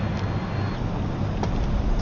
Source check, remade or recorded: recorded